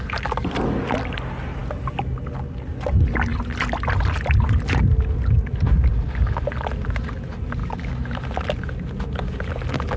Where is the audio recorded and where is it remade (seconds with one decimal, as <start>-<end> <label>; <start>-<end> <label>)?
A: 0.0-10.0 recorded